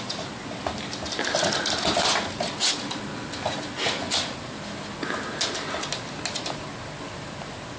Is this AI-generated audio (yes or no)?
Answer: no